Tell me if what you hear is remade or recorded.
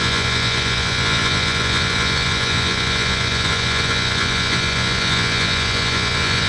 remade